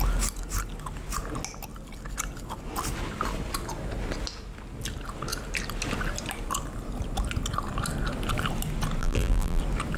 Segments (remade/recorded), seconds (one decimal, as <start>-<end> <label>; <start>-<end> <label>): 0.0-9.0 recorded; 9.0-9.6 remade; 9.6-10.0 recorded

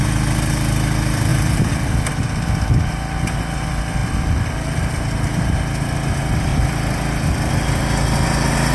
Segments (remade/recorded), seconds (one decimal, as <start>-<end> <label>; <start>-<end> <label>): 0.0-1.3 recorded; 1.3-2.1 remade; 2.1-4.0 recorded; 4.0-5.9 remade; 5.9-6.5 recorded; 6.5-7.5 remade; 7.5-8.7 recorded

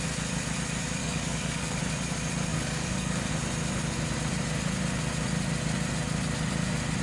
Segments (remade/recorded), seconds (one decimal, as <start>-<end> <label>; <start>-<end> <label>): 0.0-1.0 recorded; 1.0-1.8 remade; 1.8-2.5 recorded; 2.5-3.3 remade; 3.3-7.0 recorded

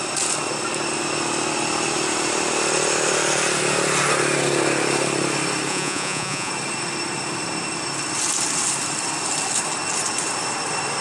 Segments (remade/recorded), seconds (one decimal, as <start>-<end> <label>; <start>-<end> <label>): 0.0-5.7 recorded; 5.7-6.5 remade; 6.5-11.0 recorded

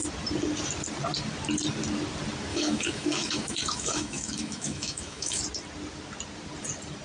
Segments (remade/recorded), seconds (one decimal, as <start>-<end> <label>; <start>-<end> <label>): 0.0-2.5 recorded; 2.5-5.4 remade; 5.4-7.0 recorded